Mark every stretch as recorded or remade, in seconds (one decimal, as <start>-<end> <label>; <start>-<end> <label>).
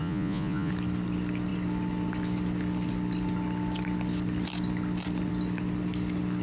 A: 0.0-0.7 remade; 0.7-6.4 recorded